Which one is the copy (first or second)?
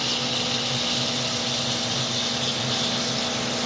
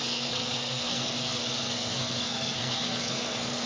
second